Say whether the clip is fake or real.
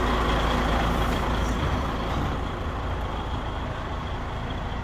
fake